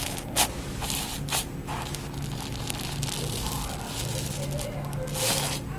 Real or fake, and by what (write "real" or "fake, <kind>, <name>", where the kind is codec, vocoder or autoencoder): real